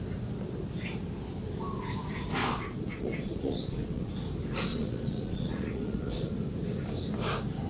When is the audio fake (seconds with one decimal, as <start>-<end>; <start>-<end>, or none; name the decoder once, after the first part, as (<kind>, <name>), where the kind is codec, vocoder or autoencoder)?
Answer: 2.4-4.1 (vocoder, Vocos); 4.7-6.3